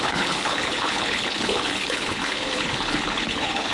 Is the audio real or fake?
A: fake